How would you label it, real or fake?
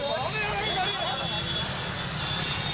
real